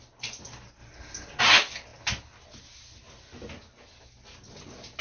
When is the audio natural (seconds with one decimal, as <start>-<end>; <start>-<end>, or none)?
0.0-5.0